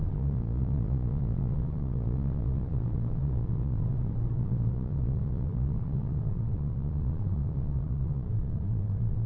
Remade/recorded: remade